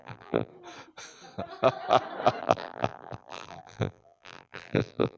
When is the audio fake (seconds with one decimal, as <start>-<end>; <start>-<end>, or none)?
0.0-0.5; 2.4-5.2